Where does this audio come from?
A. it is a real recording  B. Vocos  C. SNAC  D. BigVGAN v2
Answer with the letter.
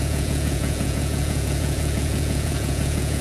B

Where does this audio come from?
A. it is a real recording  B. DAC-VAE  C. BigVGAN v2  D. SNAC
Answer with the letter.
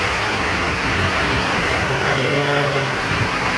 D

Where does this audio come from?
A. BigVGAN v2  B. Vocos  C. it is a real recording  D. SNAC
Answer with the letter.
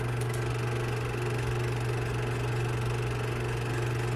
C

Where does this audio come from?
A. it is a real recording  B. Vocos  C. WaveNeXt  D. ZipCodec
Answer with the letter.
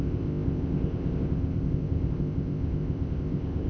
D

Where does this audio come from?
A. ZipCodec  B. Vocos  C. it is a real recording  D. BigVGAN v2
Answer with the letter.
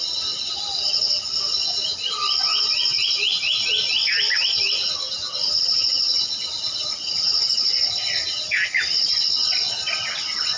C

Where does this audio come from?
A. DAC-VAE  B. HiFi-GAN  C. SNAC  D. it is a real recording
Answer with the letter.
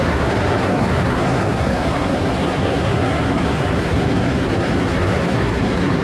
C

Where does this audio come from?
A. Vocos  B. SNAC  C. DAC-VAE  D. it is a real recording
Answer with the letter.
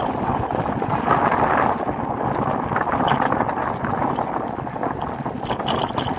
D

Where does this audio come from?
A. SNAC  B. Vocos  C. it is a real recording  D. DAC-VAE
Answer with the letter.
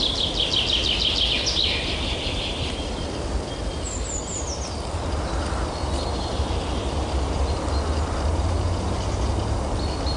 C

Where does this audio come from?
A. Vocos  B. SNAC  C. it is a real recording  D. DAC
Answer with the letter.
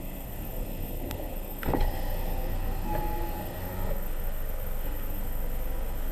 B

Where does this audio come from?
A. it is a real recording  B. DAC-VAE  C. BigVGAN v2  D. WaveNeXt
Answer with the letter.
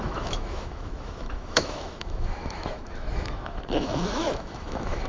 B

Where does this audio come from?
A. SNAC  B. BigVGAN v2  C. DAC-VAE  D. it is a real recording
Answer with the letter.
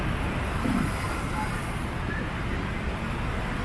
D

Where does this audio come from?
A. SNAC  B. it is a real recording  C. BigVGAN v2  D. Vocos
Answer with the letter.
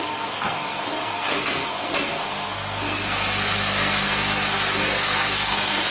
A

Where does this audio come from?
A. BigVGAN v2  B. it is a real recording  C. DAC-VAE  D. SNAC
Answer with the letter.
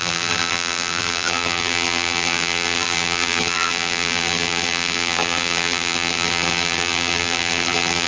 A